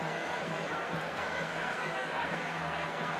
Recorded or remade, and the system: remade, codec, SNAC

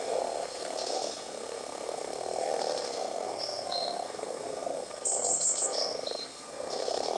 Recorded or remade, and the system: remade, codec, SNAC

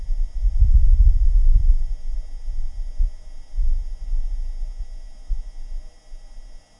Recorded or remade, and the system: recorded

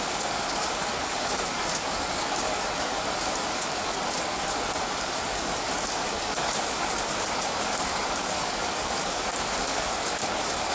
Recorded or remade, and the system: remade, codec, DAC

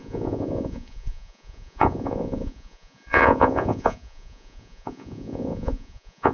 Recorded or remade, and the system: remade, vocoder, Vocos